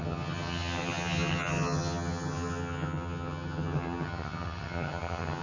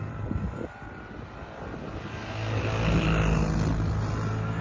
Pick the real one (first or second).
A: second